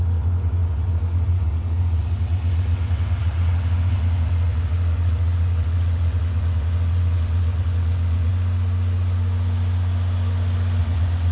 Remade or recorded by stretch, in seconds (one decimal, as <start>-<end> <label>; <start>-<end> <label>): 0.0-8.3 remade; 8.3-10.8 recorded; 10.8-11.3 remade